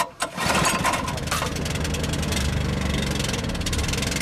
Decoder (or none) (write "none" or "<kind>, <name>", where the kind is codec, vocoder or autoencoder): none